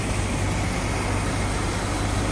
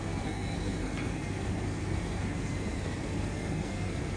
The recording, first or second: first